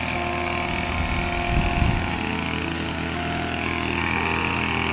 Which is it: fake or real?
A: real